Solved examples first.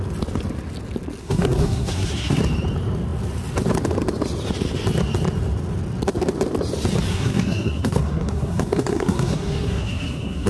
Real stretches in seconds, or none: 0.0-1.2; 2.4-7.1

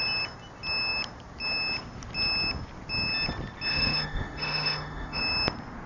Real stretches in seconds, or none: 0.0-3.7; 5.2-5.9

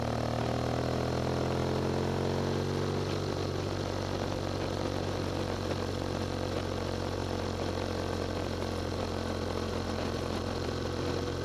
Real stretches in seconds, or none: 0.0-11.4